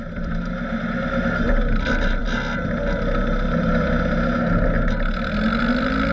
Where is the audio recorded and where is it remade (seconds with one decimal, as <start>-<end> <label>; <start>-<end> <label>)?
0.0-6.1 recorded